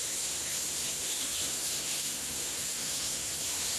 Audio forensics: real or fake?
fake